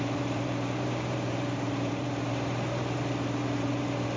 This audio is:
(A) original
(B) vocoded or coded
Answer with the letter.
B